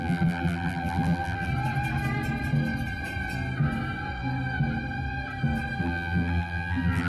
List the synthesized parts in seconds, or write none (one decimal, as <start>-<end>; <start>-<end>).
0.0-1.5; 5.8-7.1